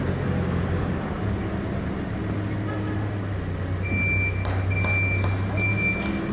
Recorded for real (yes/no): yes